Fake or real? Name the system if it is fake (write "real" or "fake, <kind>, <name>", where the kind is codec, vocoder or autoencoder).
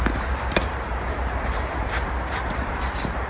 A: fake, vocoder, BigVGAN v2